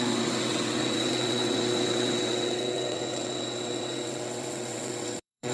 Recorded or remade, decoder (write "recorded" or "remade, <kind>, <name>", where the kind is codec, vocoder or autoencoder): remade, vocoder, WaveNeXt